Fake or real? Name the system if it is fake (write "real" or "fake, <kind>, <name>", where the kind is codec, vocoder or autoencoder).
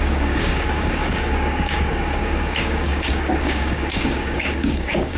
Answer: fake, codec, DAC